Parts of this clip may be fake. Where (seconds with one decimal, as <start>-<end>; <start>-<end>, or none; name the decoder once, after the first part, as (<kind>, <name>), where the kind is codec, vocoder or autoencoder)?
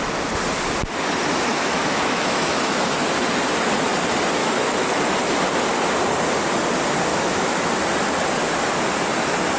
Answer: 1.5-2.8 (autoencoder, DAC-VAE); 4.4-5.0; 7.1-7.7